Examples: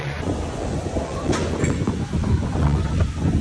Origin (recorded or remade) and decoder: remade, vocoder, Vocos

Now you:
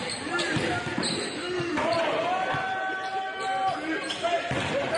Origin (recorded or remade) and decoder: recorded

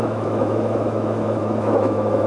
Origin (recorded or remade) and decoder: remade, autoencoder, DAC-VAE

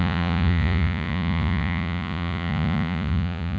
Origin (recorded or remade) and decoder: remade, vocoder, Vocos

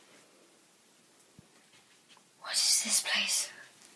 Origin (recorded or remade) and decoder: recorded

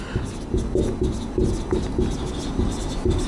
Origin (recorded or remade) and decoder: recorded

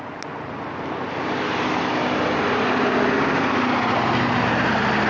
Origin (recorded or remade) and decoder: recorded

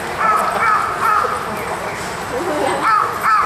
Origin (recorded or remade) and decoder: recorded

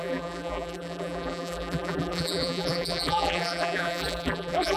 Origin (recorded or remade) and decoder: remade, vocoder, BigVGAN v2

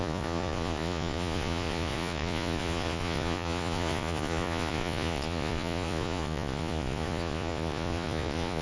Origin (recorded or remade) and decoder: remade, vocoder, Vocos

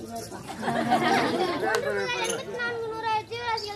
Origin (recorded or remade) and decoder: recorded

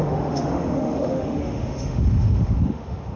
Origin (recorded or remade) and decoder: remade, autoencoder, DAC-VAE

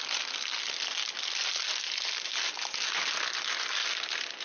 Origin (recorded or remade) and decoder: recorded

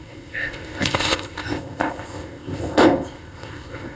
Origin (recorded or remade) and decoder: remade, codec, ZipCodec